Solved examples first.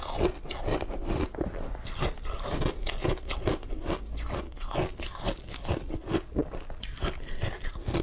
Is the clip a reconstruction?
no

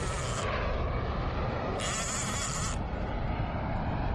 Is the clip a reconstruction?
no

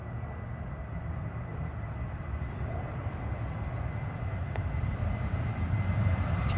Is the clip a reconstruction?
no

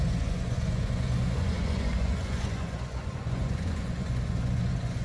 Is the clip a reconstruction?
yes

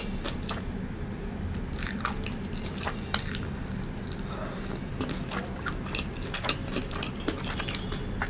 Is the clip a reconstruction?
no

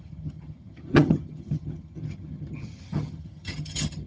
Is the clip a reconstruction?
yes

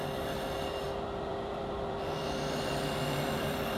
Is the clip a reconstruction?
yes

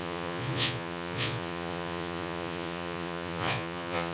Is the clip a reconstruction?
yes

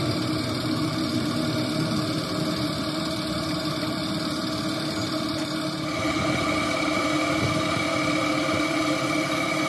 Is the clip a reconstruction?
yes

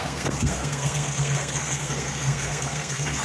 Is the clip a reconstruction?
yes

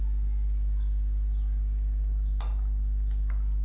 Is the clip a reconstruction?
no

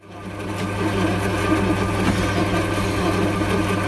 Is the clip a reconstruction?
no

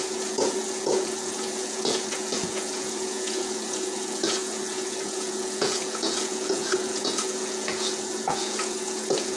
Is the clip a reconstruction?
yes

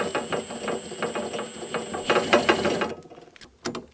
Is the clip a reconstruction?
no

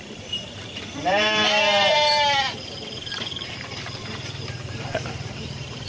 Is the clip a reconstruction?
yes